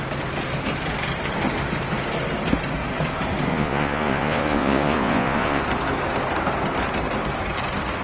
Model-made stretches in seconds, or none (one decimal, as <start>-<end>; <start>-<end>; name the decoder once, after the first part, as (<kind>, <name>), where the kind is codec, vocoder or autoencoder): 3.5-5.6 (vocoder, Vocos)